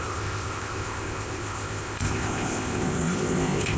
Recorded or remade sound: remade